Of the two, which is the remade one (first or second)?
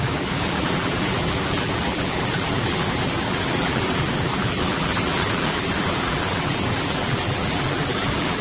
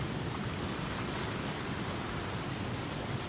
first